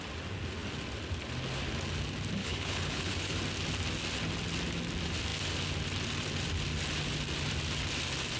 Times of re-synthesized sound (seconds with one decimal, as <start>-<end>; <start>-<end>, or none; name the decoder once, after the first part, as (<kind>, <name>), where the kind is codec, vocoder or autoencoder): 2.4-3.4 (codec, HILCodec)